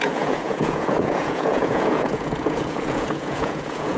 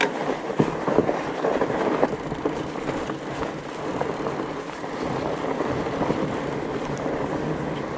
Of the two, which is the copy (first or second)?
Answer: first